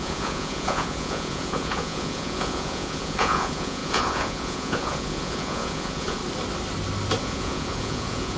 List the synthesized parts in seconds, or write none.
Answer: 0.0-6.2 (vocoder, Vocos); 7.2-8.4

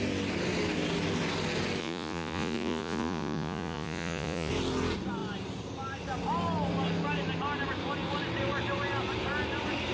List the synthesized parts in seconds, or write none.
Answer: 1.8-4.5 (vocoder, Vocos)

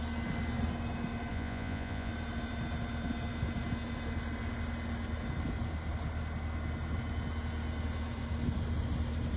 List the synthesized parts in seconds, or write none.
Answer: 1.3-2.1 (vocoder, Vocos)

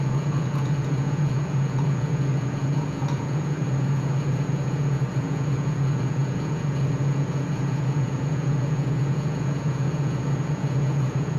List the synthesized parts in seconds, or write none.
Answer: 0.0-11.4 (vocoder, Vocos)

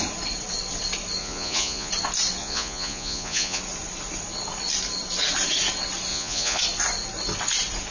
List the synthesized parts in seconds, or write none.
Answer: 1.2-1.9 (vocoder, Vocos); 2.4-3.6; 6.1-6.6

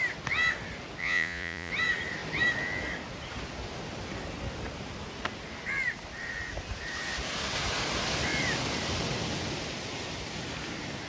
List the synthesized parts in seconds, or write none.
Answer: 1.0-1.7 (vocoder, Vocos)